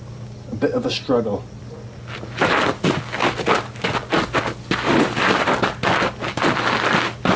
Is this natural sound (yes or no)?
yes